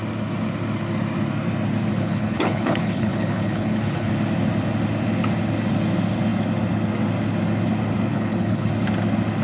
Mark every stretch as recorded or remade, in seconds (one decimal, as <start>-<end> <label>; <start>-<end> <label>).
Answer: 0.0-1.9 recorded; 1.9-4.1 remade; 4.1-8.1 recorded; 8.1-8.7 remade; 8.7-9.4 recorded